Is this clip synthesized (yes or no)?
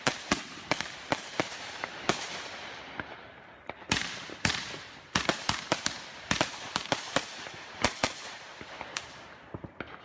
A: yes